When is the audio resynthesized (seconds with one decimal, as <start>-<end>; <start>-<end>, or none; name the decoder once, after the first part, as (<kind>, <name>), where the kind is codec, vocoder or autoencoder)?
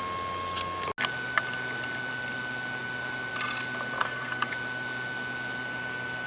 4.0-4.5 (codec, SNAC)